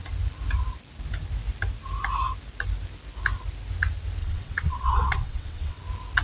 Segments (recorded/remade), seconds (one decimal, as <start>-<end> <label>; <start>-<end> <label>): 0.0-4.2 recorded; 4.2-5.8 remade; 5.8-6.2 recorded